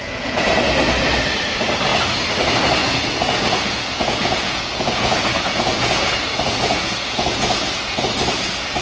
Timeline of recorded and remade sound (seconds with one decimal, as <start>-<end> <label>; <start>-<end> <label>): 0.0-0.5 remade; 0.5-2.8 recorded; 2.8-8.0 remade; 8.0-8.8 recorded

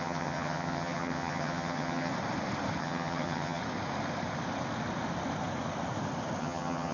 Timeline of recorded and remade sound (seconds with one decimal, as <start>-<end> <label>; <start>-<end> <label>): 0.0-2.1 remade; 2.1-2.8 recorded; 2.8-3.6 remade; 3.6-6.4 recorded; 6.4-6.9 remade

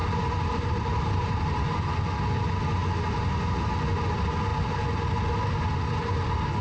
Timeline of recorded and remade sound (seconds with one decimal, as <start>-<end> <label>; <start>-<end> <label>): 0.0-2.0 remade; 2.0-6.6 recorded

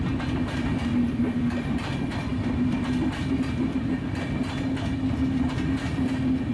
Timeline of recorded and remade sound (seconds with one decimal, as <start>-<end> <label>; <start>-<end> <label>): 0.0-6.5 recorded

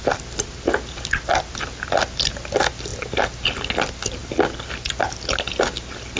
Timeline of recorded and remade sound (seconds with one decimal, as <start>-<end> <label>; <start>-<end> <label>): 0.0-6.2 recorded

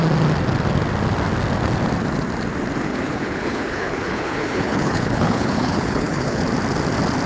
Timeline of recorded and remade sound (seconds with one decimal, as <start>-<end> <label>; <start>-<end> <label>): 0.0-2.9 recorded; 2.9-6.4 remade; 6.4-7.3 recorded

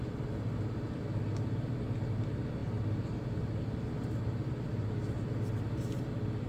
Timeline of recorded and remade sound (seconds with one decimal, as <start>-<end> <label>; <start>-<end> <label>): 0.0-2.6 recorded; 2.6-3.7 remade; 3.7-6.5 recorded